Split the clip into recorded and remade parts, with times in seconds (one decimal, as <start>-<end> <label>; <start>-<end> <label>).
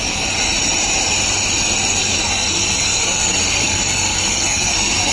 0.0-2.0 recorded; 2.0-5.1 remade